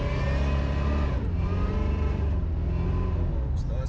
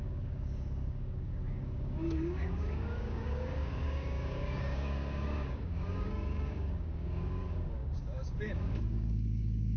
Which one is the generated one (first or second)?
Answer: second